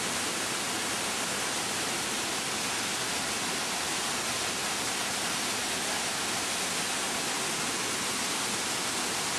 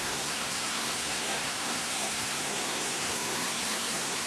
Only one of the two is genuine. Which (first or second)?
first